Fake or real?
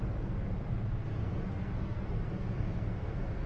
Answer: fake